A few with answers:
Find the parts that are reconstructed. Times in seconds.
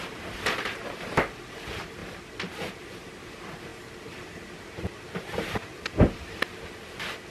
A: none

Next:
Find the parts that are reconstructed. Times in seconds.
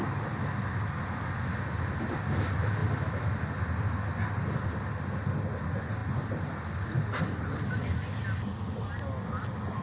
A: none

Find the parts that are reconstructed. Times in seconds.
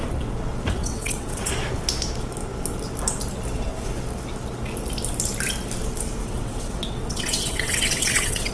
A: 0.8-1.5; 6.2-8.5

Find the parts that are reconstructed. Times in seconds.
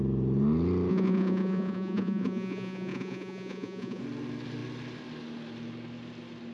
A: 0.9-4.0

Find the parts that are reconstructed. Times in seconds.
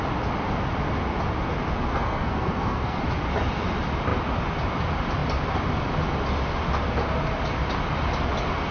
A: 1.9-3.0